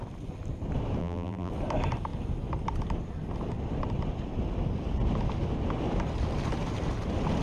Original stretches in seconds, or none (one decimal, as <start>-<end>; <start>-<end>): 0.0-1.0; 1.5-7.4